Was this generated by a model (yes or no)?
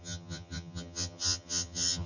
yes